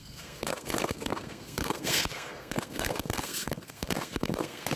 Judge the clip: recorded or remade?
remade